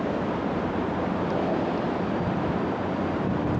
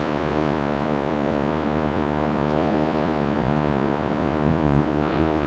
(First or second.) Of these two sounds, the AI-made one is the second